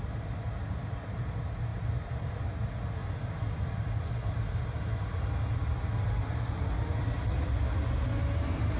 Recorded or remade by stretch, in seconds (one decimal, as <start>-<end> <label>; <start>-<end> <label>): 0.0-1.7 recorded; 1.7-2.4 remade; 2.4-3.0 recorded; 3.0-4.5 remade; 4.5-8.8 recorded